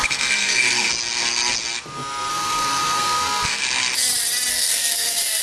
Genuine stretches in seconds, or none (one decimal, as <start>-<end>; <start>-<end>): 0.9-2.3; 3.6-4.5